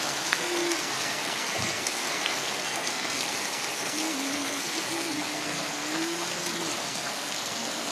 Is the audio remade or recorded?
remade